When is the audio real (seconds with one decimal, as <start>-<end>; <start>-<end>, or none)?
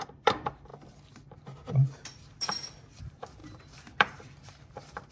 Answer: 0.7-3.0